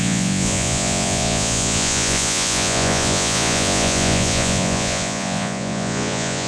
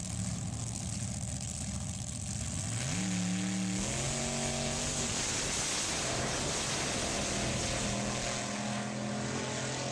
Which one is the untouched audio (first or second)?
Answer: second